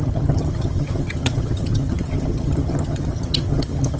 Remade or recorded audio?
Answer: remade